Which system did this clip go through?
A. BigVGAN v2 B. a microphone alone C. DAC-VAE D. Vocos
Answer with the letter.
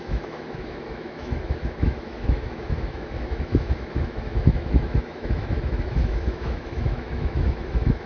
C